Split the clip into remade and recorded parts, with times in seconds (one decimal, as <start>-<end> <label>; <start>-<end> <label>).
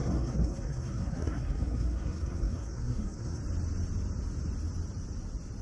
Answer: 0.0-3.4 remade; 3.4-5.6 recorded